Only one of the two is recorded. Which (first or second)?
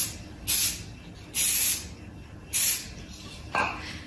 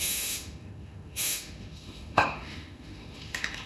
first